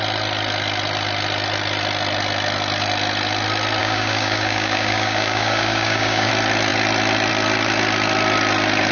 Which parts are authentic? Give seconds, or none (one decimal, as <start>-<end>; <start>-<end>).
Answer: 0.0-3.8; 6.3-8.9